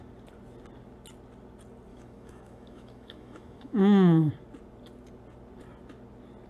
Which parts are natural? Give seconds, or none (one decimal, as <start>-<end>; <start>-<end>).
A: 0.0-1.9; 4.3-6.5